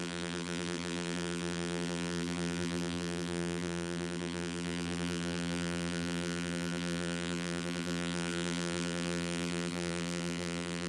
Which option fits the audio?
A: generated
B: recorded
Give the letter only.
A